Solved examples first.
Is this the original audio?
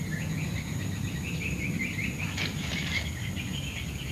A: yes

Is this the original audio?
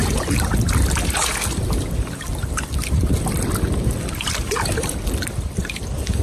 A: yes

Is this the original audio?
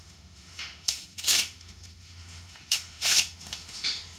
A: no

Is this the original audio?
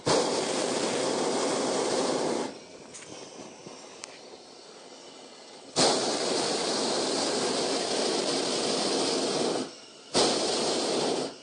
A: yes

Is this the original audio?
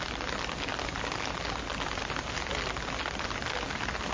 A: yes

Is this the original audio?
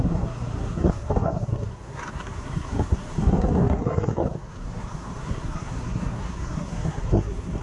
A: no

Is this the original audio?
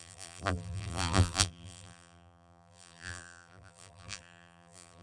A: no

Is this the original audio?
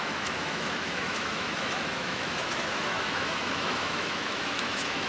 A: no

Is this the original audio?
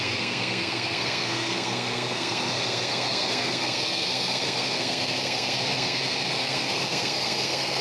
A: no